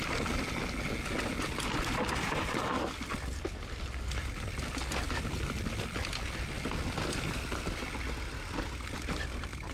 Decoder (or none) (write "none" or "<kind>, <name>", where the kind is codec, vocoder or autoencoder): none